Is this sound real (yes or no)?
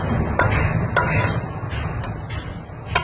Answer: yes